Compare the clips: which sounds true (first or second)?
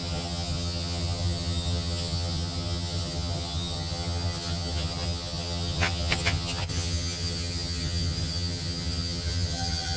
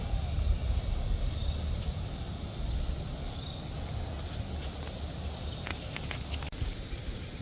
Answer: second